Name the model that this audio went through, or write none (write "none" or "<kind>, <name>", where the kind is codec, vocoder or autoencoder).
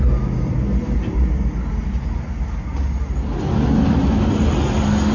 none